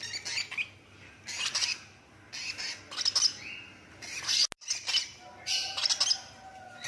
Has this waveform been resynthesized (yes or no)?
no